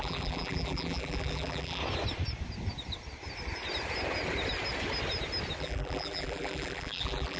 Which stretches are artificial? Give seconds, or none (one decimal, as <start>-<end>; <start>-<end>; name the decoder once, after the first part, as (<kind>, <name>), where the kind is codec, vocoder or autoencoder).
0.0-1.8 (vocoder, BigVGAN v2); 5.6-7.4